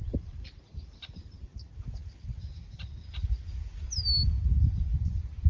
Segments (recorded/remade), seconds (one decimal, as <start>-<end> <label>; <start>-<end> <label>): 0.0-2.0 remade; 2.0-4.6 recorded; 4.6-5.5 remade